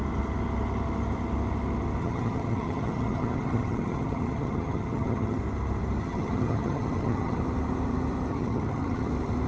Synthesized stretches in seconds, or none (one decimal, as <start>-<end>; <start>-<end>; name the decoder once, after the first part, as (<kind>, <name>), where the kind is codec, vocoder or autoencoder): 2.0-5.4 (vocoder, HiFi-GAN); 6.0-7.4; 8.3-9.1